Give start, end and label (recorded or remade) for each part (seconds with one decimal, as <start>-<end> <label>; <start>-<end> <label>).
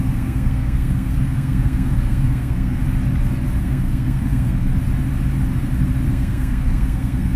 0.0-2.8 remade; 2.8-3.6 recorded; 3.6-4.7 remade; 4.7-6.1 recorded; 6.1-7.4 remade